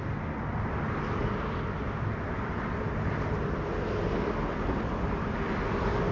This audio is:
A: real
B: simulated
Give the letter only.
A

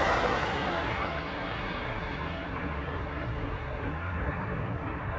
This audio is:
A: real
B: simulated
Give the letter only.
B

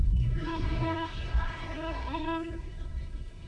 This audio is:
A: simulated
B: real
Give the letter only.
A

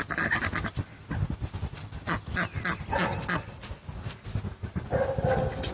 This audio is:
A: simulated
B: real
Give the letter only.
B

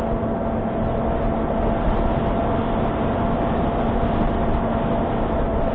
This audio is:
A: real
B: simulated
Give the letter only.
A